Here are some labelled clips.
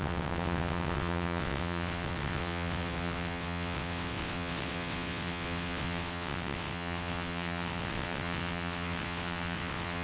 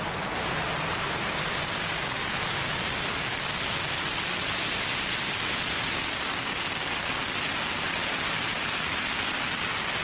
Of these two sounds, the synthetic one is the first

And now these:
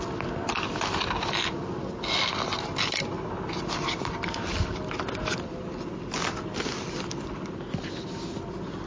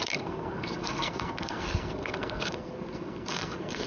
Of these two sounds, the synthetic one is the second